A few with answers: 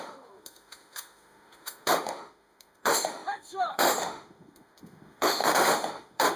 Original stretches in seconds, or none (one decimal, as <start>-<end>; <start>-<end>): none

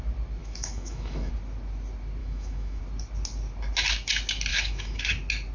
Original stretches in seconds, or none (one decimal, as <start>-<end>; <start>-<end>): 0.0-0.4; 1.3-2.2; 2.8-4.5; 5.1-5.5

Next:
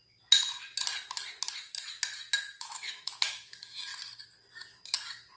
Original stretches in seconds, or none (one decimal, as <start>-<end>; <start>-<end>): 0.0-2.6; 3.9-5.4

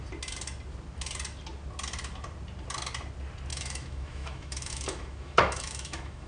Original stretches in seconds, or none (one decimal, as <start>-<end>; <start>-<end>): 0.0-3.5

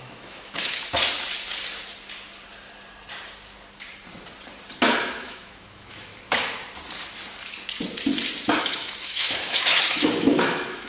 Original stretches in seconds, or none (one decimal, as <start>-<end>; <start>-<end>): 0.8-5.0; 6.1-8.6